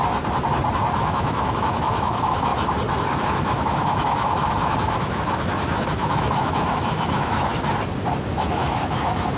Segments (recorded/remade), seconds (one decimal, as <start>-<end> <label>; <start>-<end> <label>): 0.0-1.0 recorded; 1.0-2.5 remade; 2.5-3.2 recorded; 3.2-7.5 remade; 7.5-8.2 recorded; 8.2-9.4 remade

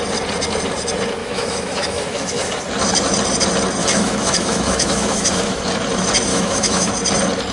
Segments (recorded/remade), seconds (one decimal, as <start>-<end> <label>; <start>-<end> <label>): 0.0-1.2 recorded; 1.2-2.6 remade; 2.6-3.8 recorded; 3.8-5.6 remade; 5.6-6.3 recorded; 6.3-6.9 remade; 6.9-7.5 recorded